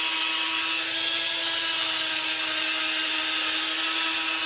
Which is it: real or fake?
real